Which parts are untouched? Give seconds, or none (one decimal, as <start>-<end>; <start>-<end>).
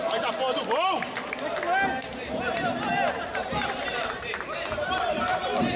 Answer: 0.0-3.3